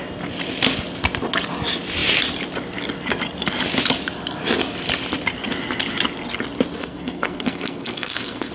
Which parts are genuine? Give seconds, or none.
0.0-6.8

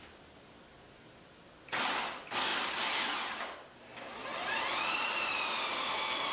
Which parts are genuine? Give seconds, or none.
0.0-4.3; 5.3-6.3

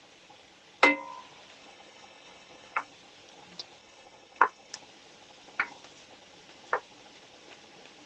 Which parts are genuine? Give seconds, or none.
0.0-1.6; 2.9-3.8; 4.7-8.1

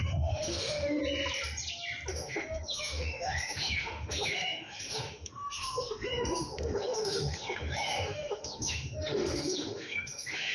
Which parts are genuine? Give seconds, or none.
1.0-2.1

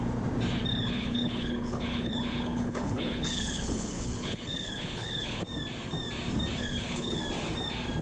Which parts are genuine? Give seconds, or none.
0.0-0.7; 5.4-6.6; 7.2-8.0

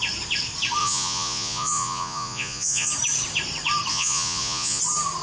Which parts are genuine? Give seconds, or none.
0.0-0.8; 2.9-3.9; 4.8-5.2

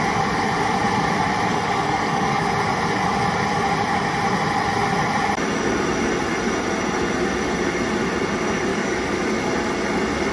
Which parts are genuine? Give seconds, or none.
0.0-1.5; 2.4-8.7; 9.2-10.3